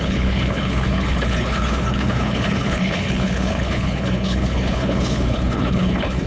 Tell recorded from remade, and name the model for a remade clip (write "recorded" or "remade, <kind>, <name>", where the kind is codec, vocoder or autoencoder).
remade, codec, HILCodec